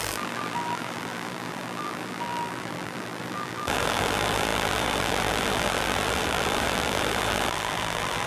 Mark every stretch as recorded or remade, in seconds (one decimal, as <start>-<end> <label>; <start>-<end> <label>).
0.0-8.3 remade